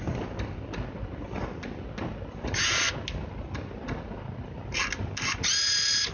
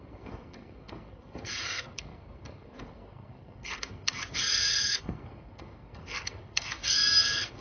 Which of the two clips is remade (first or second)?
second